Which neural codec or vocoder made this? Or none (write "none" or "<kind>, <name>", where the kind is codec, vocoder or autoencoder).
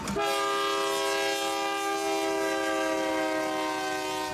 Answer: none